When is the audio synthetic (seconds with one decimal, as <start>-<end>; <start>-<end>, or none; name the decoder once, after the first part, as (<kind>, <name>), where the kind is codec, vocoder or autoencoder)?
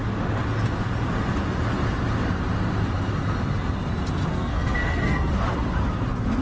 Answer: 4.3-5.3 (codec, SNAC)